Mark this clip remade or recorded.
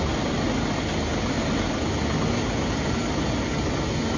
recorded